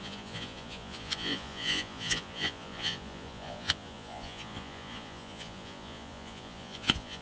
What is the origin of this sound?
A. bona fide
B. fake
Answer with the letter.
B